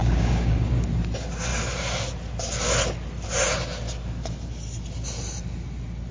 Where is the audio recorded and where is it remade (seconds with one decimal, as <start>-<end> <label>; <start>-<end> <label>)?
0.0-0.7 remade; 0.7-6.1 recorded